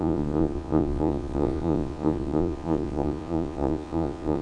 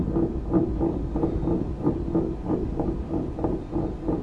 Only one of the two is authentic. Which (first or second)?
second